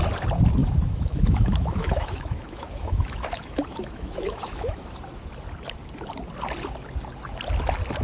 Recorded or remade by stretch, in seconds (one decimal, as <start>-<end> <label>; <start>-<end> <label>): 0.0-0.6 recorded; 0.6-5.0 remade; 5.0-8.0 recorded

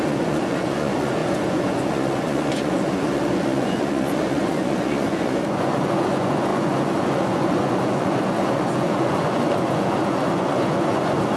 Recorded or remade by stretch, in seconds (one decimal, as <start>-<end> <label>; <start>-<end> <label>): 0.0-11.4 remade